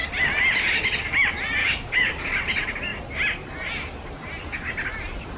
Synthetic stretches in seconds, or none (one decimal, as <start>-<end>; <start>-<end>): 1.6-2.2